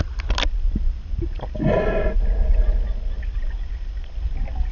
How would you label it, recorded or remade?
recorded